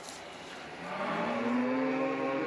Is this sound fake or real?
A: fake